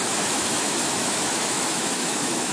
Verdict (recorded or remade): remade